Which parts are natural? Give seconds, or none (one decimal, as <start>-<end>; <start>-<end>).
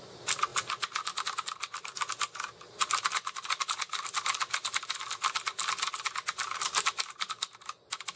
0.0-8.2